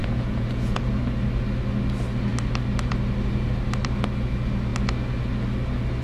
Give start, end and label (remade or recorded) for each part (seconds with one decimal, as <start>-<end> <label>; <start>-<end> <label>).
0.0-0.9 remade; 0.9-6.0 recorded